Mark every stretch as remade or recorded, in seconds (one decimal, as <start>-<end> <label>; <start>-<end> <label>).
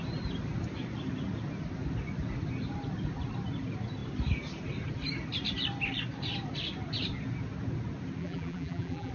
0.0-8.2 recorded; 8.2-9.1 remade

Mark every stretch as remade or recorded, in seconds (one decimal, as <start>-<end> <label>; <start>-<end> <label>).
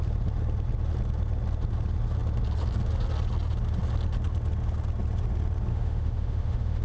0.0-5.7 recorded; 5.7-6.8 remade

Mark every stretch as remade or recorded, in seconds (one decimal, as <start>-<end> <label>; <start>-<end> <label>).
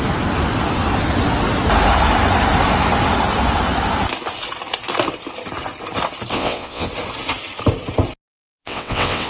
0.0-6.3 recorded; 6.3-6.9 remade; 6.9-8.6 recorded; 8.6-9.3 remade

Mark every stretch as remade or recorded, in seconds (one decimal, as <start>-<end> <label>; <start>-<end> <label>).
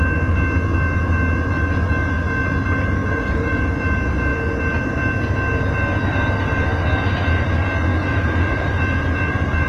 0.0-3.0 recorded; 3.0-3.6 remade; 3.6-7.9 recorded; 7.9-8.7 remade; 8.7-9.7 recorded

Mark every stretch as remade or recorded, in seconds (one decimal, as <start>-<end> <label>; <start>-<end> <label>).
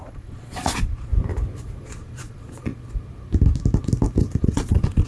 0.0-1.1 remade; 1.1-1.8 recorded; 1.8-2.7 remade; 2.7-4.4 recorded; 4.4-5.1 remade